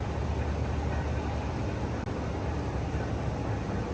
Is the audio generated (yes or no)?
no